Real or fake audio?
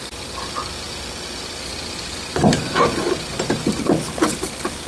real